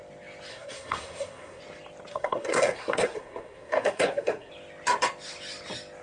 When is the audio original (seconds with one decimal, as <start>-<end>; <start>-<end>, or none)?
0.0-0.5; 1.6-2.1; 4.5-6.0